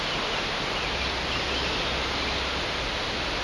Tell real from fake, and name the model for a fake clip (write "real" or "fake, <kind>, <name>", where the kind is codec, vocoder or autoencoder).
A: real